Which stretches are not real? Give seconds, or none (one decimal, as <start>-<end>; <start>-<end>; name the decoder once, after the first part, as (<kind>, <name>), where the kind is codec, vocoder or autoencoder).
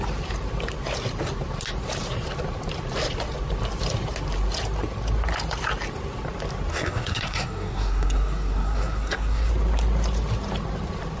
6.7-9.5 (codec, SNAC)